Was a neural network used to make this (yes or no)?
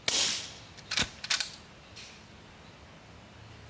no